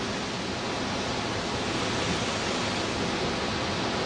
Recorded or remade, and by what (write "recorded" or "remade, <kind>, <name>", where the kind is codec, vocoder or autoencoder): recorded